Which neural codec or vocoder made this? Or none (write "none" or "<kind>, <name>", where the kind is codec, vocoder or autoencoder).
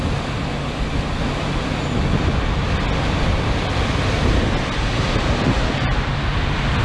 none